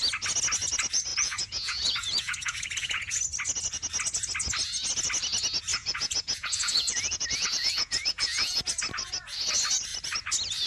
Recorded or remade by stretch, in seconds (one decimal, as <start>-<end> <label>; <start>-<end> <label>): 0.0-1.1 recorded; 1.1-3.2 remade; 3.2-5.7 recorded; 5.7-8.6 remade; 8.6-10.7 recorded